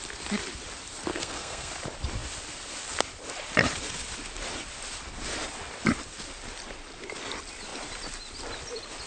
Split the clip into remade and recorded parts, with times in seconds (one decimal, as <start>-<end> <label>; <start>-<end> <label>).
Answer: 0.0-1.1 recorded; 1.1-1.7 remade; 1.7-9.1 recorded